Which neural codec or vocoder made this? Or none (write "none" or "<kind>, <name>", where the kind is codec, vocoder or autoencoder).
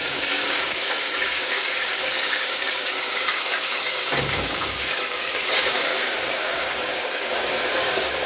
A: codec, DAC